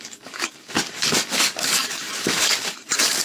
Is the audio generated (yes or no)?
yes